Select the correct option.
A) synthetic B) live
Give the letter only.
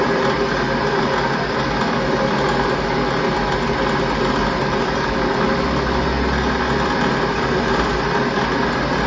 B